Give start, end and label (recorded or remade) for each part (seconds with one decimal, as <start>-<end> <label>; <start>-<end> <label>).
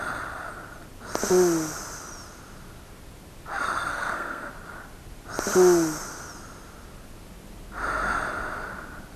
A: 0.0-3.9 recorded; 3.9-4.5 remade; 4.5-9.2 recorded